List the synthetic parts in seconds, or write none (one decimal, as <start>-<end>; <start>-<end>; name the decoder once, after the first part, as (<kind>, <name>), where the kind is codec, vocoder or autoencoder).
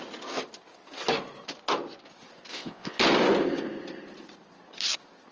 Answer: 2.5-3.0 (vocoder, WaveNeXt)